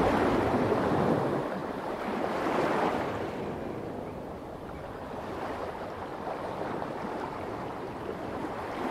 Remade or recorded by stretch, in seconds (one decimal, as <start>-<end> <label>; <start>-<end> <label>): 0.0-6.1 remade; 6.1-7.1 recorded; 7.1-8.9 remade

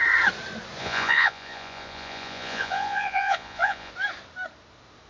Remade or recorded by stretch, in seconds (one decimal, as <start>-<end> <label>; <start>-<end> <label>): 0.0-0.8 recorded; 0.8-3.9 remade; 3.9-5.1 recorded

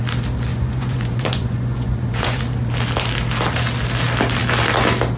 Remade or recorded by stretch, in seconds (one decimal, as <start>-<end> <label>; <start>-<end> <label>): 0.0-0.5 recorded; 0.5-2.4 remade; 2.4-5.2 recorded

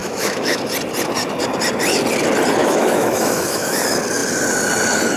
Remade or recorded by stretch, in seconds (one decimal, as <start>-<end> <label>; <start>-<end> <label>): 0.0-0.6 remade; 0.6-2.6 recorded; 2.6-3.8 remade; 3.8-5.2 recorded

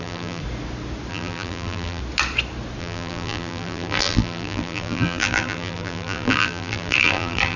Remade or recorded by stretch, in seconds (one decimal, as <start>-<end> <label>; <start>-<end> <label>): 0.0-0.4 remade; 0.4-1.1 recorded; 1.1-2.0 remade; 2.0-2.8 recorded; 2.8-7.6 remade

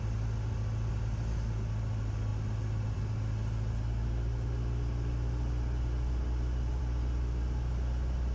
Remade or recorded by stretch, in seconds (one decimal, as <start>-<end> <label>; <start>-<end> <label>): 0.0-8.3 recorded

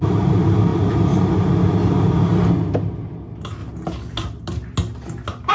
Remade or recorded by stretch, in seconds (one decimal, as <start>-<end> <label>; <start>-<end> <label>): 0.0-5.5 recorded